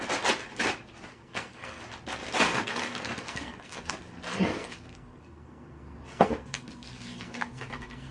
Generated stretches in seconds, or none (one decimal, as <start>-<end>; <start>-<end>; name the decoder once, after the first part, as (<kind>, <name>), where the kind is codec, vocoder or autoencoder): 1.1-1.8 (codec, SNAC); 2.5-3.9; 4.3-8.1